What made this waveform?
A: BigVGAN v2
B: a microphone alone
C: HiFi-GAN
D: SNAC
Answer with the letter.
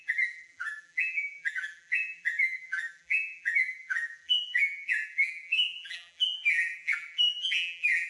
A